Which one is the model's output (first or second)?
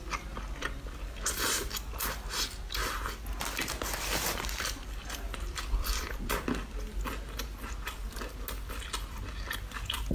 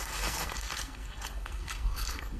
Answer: second